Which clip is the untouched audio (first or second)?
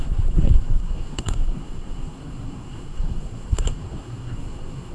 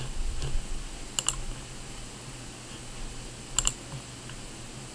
second